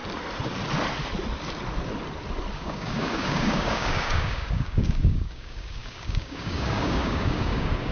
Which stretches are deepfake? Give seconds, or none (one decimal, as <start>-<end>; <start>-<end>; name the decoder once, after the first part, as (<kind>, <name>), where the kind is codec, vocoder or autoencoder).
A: 2.6-7.9 (codec, DAC)